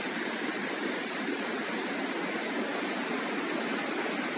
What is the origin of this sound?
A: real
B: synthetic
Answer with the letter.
A